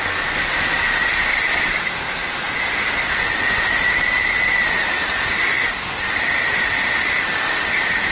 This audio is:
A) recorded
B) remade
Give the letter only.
A